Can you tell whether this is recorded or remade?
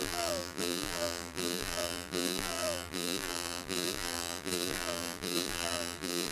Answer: remade